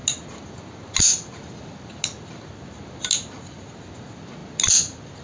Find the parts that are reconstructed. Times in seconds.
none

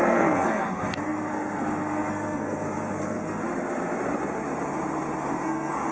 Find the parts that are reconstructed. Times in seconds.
0.0-3.4; 5.3-5.9

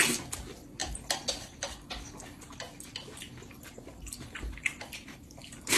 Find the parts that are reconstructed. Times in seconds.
none

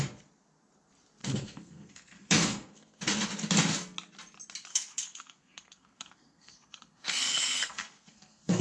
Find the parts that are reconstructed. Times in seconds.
1.2-3.0; 4.7-8.6